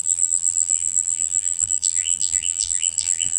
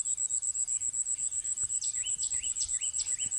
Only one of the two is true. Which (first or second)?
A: second